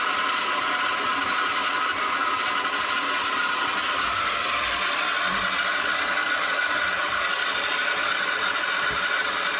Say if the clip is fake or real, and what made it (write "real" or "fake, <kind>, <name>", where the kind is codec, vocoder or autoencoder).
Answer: real